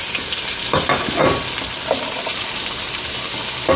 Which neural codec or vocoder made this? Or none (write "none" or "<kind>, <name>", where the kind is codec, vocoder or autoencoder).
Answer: none